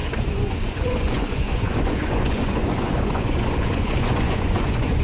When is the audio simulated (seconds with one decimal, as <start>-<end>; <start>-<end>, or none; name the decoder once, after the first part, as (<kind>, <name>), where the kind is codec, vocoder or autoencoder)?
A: 0.0-5.0 (vocoder, Vocos)